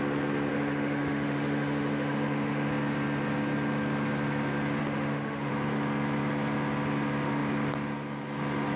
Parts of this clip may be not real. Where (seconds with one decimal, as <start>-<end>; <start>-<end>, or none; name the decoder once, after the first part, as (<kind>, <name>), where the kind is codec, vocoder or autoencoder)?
0.5-2.7 (autoencoder, DAC-VAE); 4.8-5.5